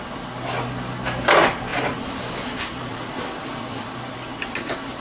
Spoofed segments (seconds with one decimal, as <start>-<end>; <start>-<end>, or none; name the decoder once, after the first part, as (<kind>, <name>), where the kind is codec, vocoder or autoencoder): 1.7-5.0 (vocoder, BigVGAN v2)